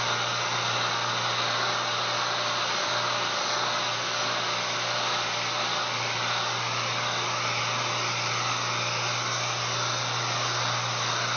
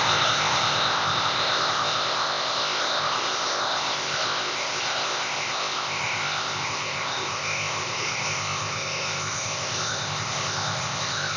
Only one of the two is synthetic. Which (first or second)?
second